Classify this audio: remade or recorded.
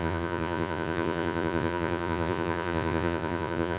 remade